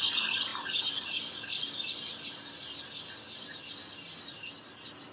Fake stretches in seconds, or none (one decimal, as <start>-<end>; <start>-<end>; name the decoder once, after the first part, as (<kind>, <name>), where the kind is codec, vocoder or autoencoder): none

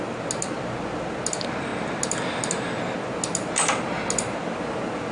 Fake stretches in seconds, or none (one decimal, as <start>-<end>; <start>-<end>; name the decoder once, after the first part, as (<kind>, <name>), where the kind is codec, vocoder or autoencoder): none

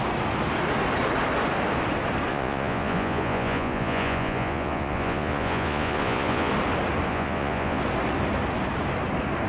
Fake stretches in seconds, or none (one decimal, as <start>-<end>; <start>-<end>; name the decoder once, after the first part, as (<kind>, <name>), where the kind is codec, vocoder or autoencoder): 2.3-6.5 (vocoder, Vocos); 7.1-7.8

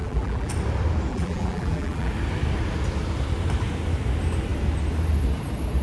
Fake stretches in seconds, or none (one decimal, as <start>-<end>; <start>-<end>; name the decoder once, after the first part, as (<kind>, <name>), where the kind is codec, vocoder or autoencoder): 0.0-0.5 (vocoder, BigVGAN v2); 1.1-2.1

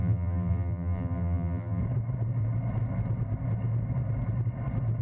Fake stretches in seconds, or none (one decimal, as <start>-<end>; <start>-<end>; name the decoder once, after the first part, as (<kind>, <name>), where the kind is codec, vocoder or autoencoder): 0.0-1.8 (vocoder, BigVGAN v2)

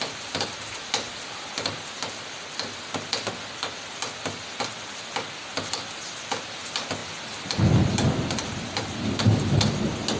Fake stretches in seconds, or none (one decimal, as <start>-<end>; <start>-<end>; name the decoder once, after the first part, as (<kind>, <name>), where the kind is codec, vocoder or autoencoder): none

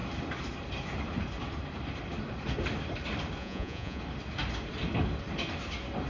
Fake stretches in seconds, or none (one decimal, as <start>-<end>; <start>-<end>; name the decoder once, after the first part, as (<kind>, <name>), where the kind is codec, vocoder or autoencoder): 3.4-4.0 (vocoder, Vocos)

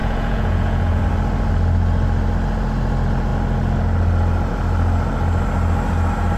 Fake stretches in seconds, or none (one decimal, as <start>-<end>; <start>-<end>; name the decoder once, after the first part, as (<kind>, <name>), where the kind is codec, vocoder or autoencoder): 0.0-1.0 (vocoder, Vocos)